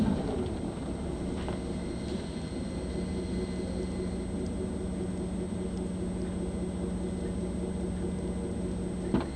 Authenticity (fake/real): real